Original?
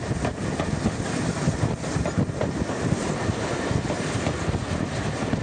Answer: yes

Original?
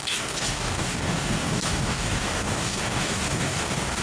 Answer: no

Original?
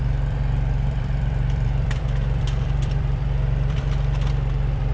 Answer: no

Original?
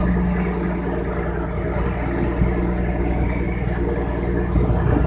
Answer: yes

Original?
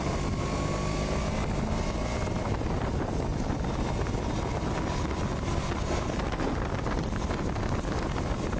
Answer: yes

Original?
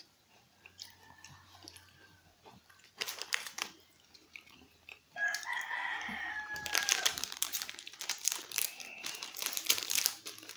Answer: no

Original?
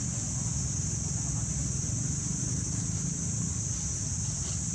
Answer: yes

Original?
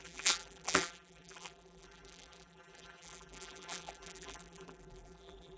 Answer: no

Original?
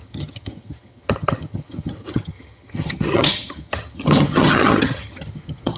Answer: no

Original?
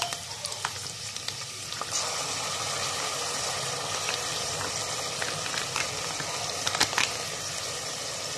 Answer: yes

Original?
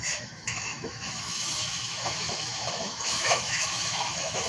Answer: no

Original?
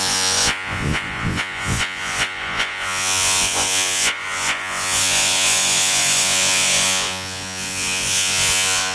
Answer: no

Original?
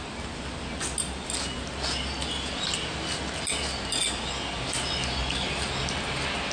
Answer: yes